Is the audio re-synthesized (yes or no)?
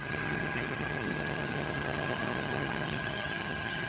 yes